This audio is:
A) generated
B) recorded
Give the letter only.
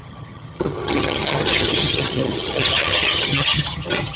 A